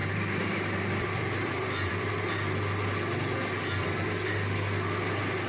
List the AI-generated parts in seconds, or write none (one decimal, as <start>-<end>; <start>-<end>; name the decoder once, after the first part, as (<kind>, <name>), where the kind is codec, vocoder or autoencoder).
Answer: 0.0-2.1 (vocoder, BigVGAN v2)